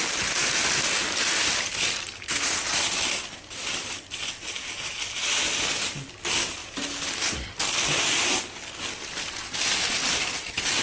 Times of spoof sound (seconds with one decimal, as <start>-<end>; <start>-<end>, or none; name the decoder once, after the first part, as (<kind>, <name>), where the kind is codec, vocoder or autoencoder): none